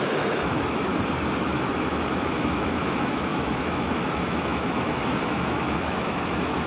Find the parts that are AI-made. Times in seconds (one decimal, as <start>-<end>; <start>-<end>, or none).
0.0-0.9; 1.4-6.7